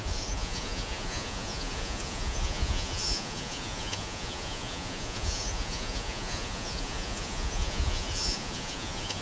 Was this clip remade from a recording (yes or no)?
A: yes